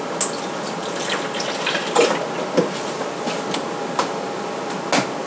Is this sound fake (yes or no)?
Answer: no